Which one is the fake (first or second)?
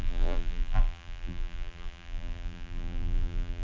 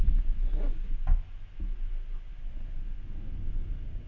first